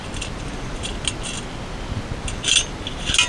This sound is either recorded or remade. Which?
recorded